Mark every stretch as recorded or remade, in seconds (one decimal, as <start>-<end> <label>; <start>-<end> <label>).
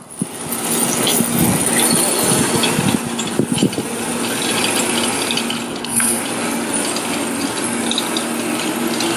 0.0-5.7 recorded; 5.7-6.2 remade; 6.2-9.2 recorded